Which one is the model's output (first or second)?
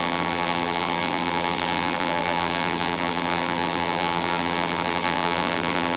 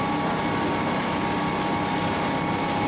first